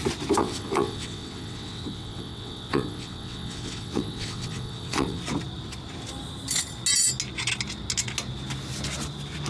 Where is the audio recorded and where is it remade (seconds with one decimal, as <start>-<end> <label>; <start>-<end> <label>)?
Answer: 0.0-0.4 recorded; 0.4-5.2 remade; 5.2-9.5 recorded